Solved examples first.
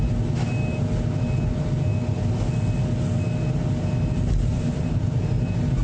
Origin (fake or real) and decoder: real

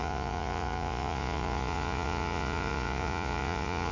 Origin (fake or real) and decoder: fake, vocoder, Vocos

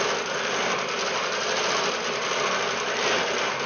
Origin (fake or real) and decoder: real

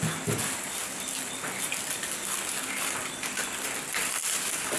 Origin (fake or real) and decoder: real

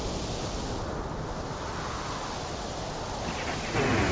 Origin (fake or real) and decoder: real